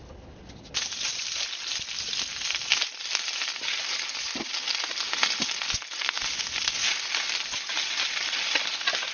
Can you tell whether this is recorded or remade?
recorded